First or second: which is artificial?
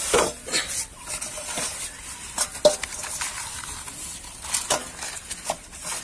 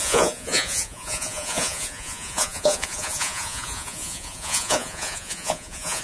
second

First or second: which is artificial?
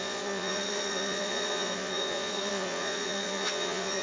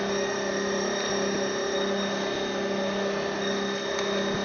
first